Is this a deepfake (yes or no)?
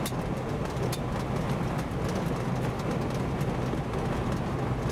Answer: no